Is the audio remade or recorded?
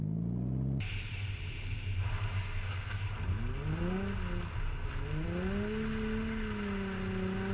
recorded